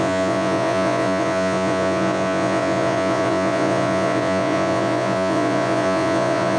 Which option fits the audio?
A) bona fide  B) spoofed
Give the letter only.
B